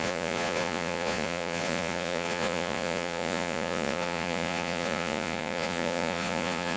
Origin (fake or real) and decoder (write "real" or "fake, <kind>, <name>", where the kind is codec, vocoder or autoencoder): fake, vocoder, Vocos